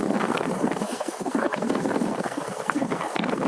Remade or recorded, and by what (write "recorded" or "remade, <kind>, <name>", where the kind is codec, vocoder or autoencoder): remade, codec, SNAC